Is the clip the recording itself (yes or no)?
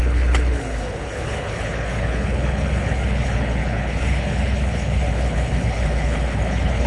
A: no